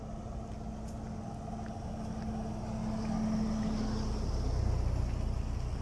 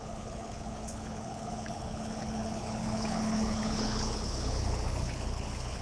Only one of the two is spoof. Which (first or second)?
second